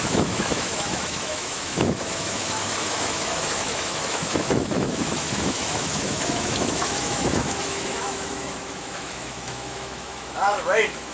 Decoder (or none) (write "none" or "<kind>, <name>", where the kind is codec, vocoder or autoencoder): autoencoder, DAC-VAE